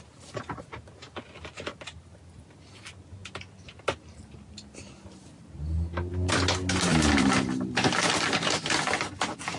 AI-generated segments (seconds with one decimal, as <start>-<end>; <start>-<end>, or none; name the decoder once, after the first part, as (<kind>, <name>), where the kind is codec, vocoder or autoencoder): 6.9-8.8 (vocoder, BigVGAN v2)